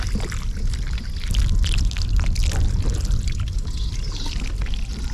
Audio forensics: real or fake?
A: real